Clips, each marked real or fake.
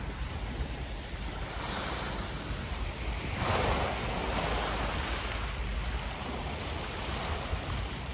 real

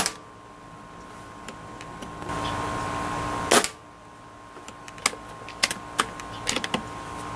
real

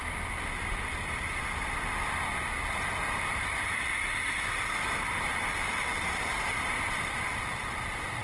real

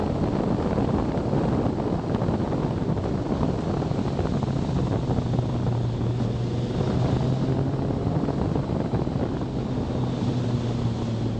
real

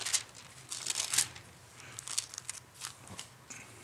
real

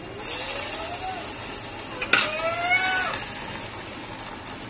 real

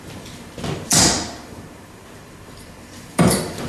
fake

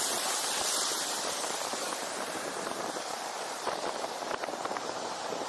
fake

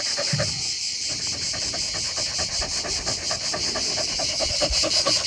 fake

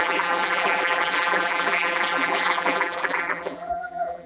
fake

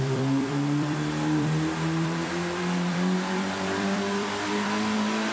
fake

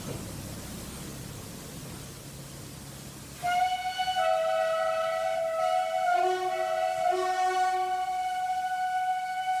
real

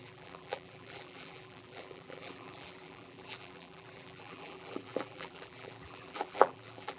fake